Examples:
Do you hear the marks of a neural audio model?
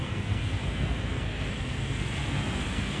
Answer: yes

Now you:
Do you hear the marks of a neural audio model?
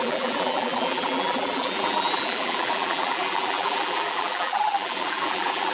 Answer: yes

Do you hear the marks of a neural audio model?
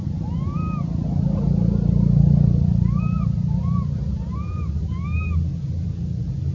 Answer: no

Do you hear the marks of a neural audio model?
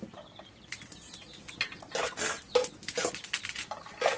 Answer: no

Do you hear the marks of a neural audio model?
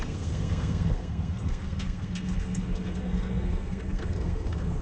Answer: yes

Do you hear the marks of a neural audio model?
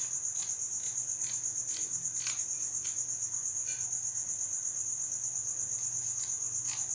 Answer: no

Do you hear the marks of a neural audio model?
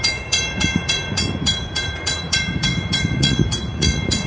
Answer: yes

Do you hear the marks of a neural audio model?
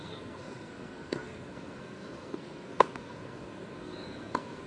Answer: yes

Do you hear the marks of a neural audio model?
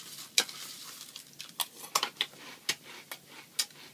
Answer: no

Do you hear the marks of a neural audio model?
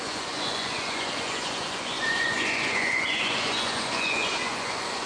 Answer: yes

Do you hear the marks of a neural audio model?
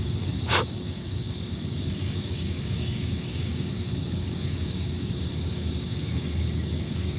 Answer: yes